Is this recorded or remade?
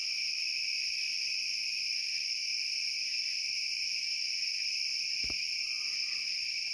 remade